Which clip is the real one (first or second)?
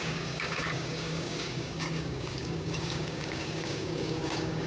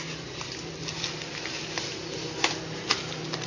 second